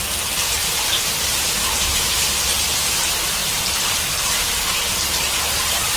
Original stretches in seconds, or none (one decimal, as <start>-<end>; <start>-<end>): 0.0-3.4

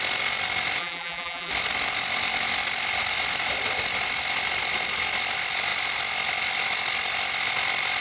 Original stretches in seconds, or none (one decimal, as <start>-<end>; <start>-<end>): 0.0-0.8; 1.5-8.0